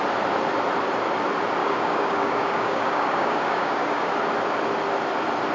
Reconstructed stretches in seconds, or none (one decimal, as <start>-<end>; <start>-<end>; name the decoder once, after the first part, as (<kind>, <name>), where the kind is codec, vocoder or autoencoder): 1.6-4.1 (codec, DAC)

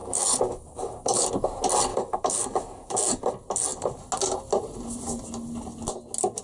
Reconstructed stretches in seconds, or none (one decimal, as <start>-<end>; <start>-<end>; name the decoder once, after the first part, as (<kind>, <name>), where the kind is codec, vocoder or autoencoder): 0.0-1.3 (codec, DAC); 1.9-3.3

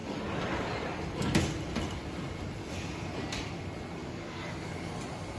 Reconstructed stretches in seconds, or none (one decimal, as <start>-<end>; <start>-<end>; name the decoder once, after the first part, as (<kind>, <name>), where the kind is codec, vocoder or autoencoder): 4.0-4.9 (codec, DAC)

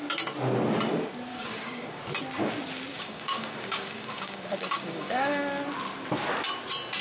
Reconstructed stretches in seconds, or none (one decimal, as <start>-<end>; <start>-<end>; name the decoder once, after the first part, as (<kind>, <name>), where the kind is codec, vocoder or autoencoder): 1.3-2.0 (codec, DAC); 2.9-5.4

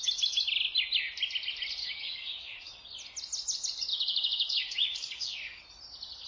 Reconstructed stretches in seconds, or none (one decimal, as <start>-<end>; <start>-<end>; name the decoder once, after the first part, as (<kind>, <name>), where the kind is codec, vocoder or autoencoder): 1.8-2.7 (codec, DAC); 3.9-5.6